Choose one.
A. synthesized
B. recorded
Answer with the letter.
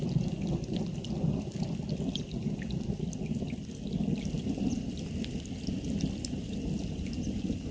B